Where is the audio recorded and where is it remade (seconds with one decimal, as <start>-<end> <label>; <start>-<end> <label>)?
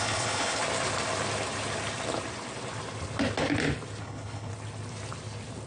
0.0-0.6 remade; 0.6-4.0 recorded; 4.0-4.5 remade; 4.5-5.7 recorded